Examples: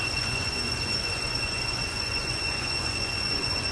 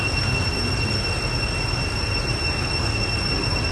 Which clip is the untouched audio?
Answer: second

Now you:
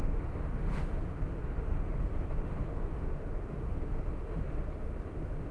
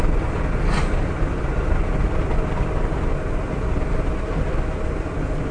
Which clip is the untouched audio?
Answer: second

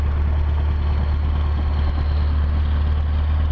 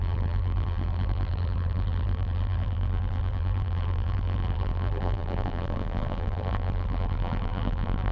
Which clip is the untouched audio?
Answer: first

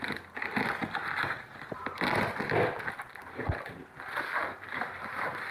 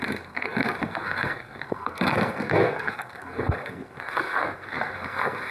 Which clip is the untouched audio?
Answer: first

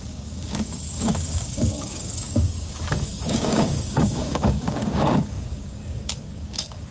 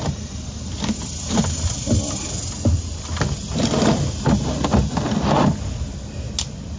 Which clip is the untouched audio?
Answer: second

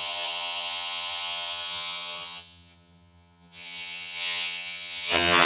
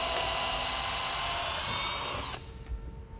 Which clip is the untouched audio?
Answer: second